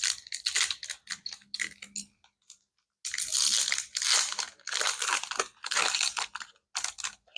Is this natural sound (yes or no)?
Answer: yes